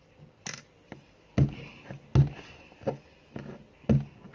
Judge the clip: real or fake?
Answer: real